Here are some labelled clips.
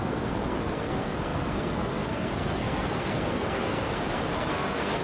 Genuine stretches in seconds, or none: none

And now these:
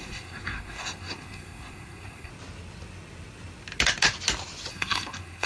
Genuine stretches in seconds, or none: 2.3-4.7

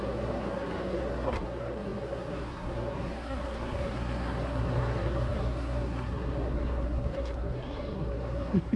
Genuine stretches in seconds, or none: none

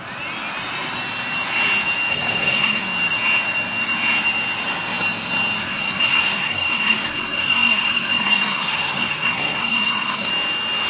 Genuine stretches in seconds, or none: 0.0-2.1; 2.8-5.6; 10.3-10.9

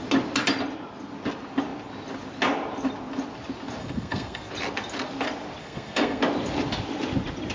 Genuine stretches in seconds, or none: 0.0-3.8; 4.5-5.6; 6.2-7.5

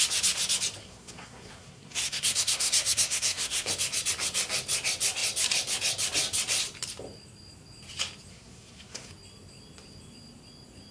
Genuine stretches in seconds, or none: 0.0-0.8; 3.7-8.3; 9.1-10.9